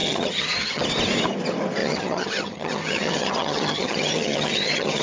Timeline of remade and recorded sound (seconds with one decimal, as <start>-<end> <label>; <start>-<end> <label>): 0.0-0.8 remade; 0.8-1.8 recorded; 1.8-5.0 remade